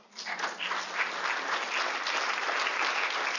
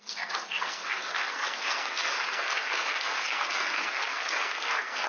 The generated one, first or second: second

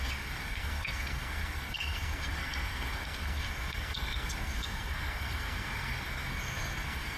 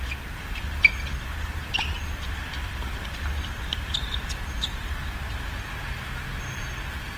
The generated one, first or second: first